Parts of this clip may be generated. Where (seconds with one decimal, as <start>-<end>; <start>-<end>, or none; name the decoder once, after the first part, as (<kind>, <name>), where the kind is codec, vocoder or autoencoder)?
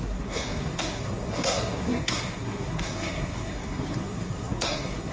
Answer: 0.0-5.1 (codec, SNAC)